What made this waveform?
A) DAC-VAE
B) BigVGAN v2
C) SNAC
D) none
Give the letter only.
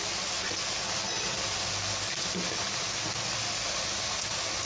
D